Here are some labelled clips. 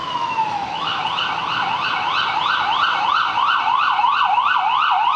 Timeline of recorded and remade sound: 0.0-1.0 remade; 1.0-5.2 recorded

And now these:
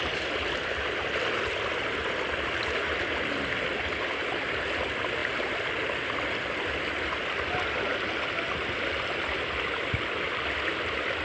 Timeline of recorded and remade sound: 0.0-5.2 remade; 5.2-6.0 recorded; 6.0-11.2 remade

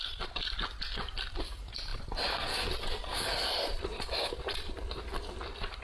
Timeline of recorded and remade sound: 0.0-5.8 recorded

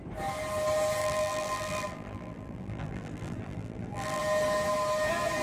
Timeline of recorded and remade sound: 0.0-1.0 recorded; 1.0-4.2 remade; 4.2-5.4 recorded

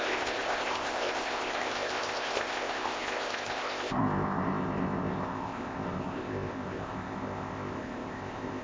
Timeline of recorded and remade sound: 0.0-8.6 remade

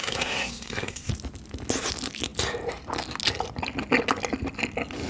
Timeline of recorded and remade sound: 0.0-1.1 remade; 1.1-5.1 recorded